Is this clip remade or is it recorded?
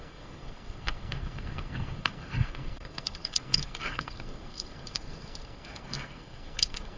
remade